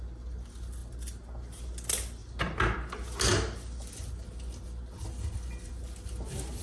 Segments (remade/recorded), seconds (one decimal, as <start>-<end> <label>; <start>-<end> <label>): 0.0-6.6 recorded